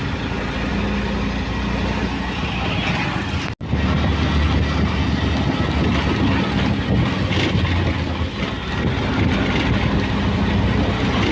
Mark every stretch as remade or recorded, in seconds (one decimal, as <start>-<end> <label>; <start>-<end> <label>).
0.0-11.3 recorded